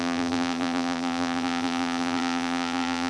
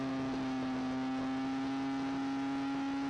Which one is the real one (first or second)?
second